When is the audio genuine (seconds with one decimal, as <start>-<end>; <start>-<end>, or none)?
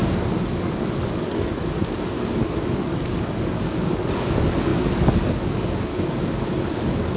none